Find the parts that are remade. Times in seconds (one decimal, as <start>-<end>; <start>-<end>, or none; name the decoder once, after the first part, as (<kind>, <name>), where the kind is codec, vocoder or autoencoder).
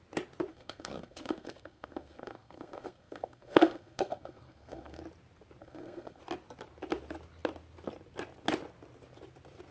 0.5-5.0 (codec, SNAC); 5.6-6.2